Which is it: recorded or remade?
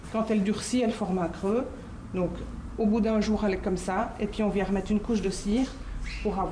remade